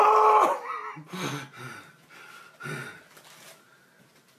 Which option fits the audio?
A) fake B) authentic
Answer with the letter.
B